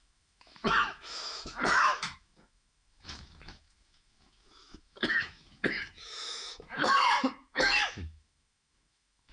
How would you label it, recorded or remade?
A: remade